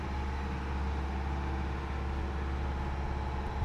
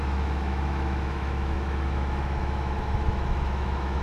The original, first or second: first